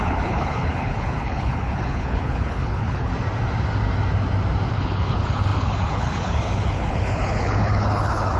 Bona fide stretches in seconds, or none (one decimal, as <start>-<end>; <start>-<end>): 3.1-4.7